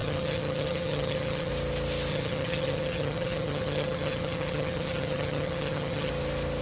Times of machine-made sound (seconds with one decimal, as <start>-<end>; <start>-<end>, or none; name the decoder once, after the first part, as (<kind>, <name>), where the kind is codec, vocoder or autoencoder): 0.0-1.5 (vocoder, HiFi-GAN); 2.1-6.1